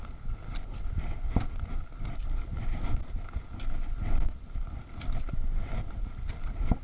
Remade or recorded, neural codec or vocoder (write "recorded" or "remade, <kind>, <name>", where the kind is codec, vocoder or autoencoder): recorded